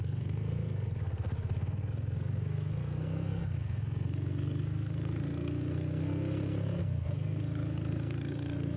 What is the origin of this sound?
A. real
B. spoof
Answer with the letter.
B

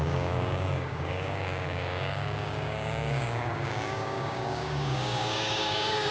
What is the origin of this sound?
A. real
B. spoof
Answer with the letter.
B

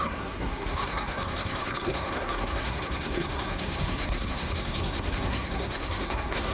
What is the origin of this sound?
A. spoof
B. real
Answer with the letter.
A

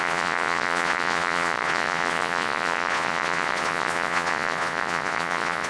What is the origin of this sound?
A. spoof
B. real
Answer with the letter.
A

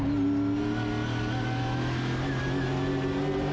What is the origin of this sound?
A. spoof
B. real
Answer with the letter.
B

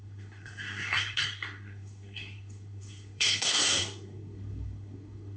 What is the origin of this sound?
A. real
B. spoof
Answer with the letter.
B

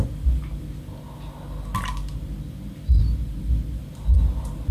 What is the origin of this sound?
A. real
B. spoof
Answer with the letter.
A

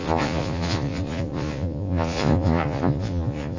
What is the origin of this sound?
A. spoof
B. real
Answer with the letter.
A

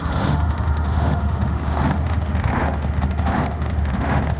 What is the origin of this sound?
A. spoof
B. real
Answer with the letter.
A